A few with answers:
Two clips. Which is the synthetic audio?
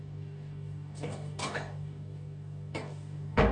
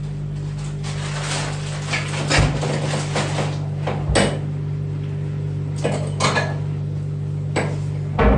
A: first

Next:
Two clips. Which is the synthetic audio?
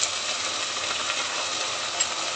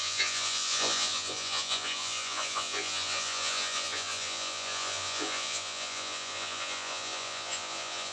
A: second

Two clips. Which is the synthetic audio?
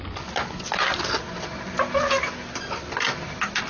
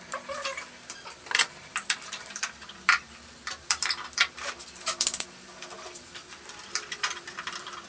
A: second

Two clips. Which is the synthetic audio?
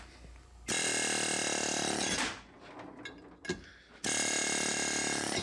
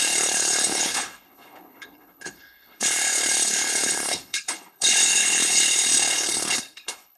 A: second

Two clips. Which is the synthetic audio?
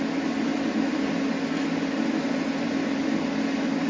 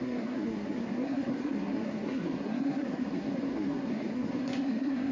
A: second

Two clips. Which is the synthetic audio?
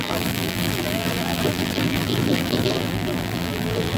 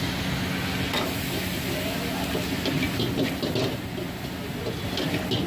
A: first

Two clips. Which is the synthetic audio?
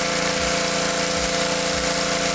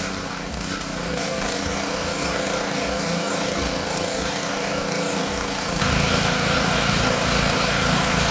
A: second